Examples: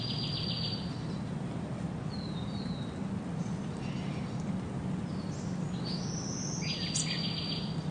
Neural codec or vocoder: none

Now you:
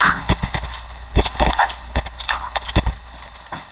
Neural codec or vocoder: codec, HILCodec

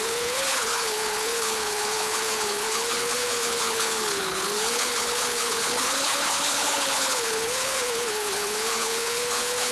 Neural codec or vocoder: codec, HILCodec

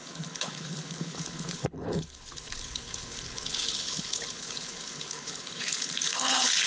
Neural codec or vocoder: codec, HILCodec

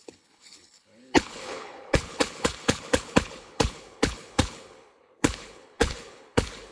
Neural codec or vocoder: codec, HILCodec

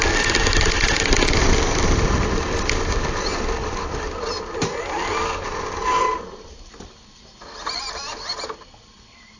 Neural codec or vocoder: none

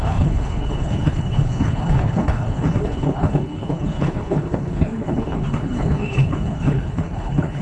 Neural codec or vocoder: codec, HILCodec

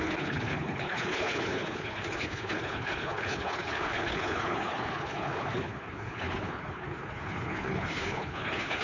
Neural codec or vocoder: codec, HILCodec